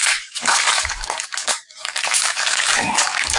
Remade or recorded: remade